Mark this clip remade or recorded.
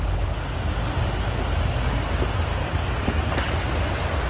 recorded